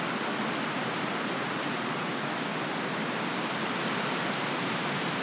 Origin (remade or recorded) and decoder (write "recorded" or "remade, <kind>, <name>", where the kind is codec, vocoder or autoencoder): recorded